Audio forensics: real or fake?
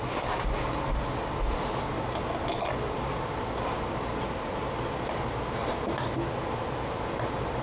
real